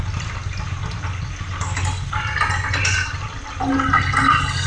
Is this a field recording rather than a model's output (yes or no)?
yes